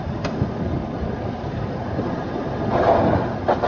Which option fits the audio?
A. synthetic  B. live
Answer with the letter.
B